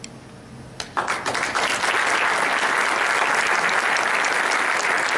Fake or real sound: real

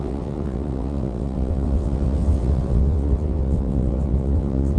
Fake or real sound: fake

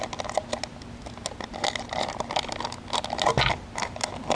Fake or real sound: real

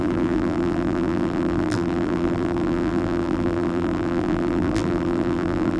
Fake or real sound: fake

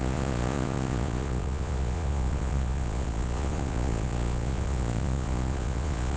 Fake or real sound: fake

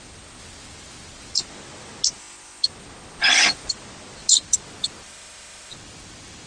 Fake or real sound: real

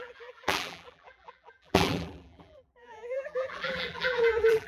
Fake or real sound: fake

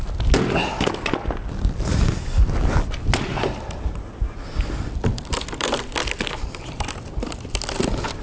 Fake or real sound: real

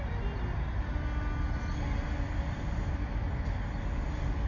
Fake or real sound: real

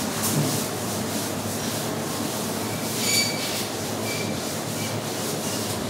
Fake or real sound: fake